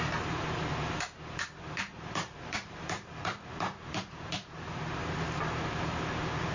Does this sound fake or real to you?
fake